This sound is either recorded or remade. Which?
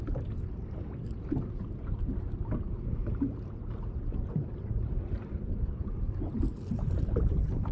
recorded